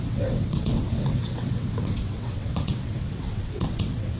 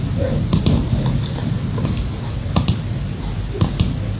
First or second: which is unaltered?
second